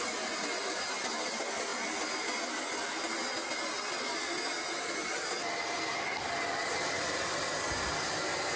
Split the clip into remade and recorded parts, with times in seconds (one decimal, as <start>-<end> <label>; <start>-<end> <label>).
0.0-8.6 recorded